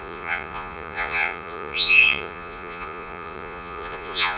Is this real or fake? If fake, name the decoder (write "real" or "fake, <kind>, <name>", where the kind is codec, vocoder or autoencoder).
fake, vocoder, Vocos